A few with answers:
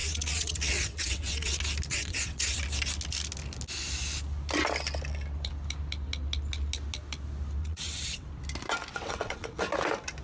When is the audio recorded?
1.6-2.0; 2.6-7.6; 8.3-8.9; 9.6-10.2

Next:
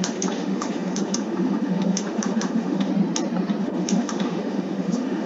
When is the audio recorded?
2.9-3.6

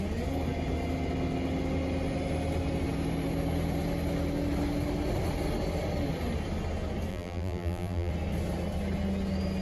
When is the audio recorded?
0.0-7.1; 8.1-9.6